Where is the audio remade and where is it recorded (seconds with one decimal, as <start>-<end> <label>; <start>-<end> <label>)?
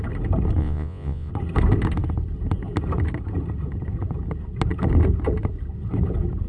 0.0-0.6 recorded; 0.6-1.3 remade; 1.3-6.5 recorded